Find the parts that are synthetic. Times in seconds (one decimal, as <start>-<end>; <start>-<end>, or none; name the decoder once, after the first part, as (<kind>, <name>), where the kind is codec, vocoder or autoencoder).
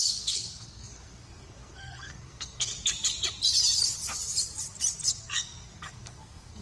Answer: 0.0-2.7 (codec, SNAC); 5.2-6.6